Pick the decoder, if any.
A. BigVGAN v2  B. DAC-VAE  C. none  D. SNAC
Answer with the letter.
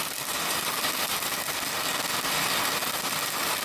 C